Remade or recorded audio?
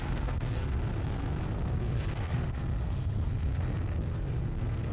remade